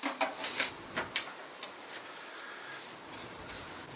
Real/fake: real